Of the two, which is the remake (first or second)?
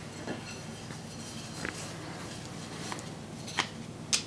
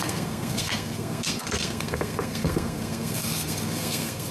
second